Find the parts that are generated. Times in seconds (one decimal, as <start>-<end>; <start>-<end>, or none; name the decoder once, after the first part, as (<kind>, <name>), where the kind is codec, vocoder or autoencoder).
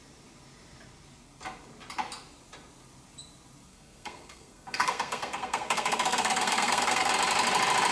3.7-7.1 (codec, SNAC)